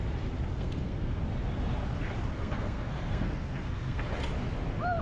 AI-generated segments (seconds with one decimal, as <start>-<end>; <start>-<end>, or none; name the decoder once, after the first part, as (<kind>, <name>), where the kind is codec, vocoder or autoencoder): 0.5-1.2 (codec, SNAC); 2.3-4.1